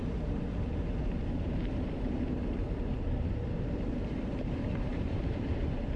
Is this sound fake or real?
fake